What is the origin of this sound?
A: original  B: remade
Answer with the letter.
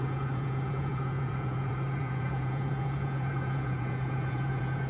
B